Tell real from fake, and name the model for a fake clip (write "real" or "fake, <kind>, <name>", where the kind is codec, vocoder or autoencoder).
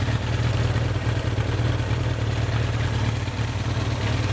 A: real